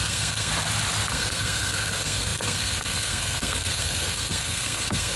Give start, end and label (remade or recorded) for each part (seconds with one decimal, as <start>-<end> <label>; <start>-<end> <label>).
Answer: 0.0-0.5 remade; 0.5-1.1 recorded; 1.1-5.2 remade